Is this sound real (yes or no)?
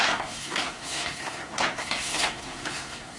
no